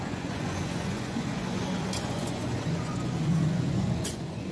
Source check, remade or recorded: remade